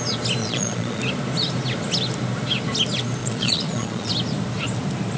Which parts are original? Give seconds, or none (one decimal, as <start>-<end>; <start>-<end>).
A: 0.0-0.4; 1.0-3.2; 4.1-5.2